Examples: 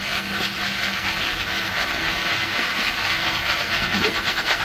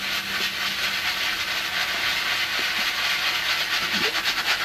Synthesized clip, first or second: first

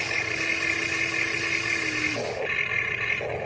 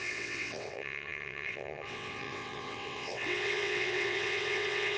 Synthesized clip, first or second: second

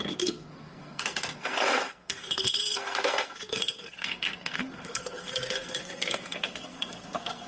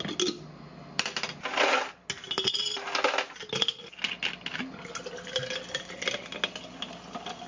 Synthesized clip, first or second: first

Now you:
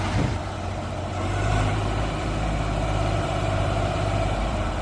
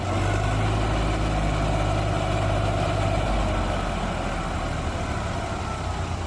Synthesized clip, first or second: first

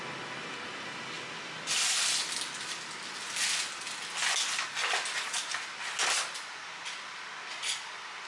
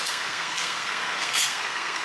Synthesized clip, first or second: second